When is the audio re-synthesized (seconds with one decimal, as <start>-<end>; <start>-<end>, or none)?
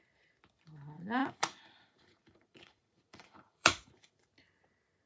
1.2-4.3